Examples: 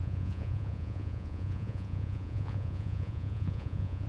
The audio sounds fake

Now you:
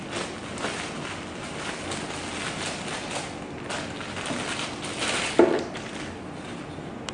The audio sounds real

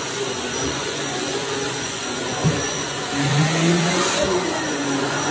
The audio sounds fake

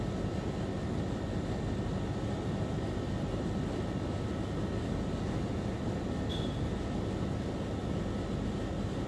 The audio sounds real